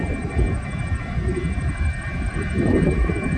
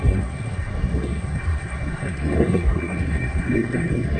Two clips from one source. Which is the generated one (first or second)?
second